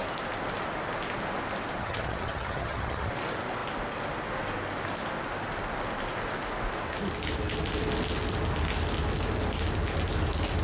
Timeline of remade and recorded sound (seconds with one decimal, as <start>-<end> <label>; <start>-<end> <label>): 0.0-1.8 recorded; 1.8-3.1 remade; 3.1-10.6 recorded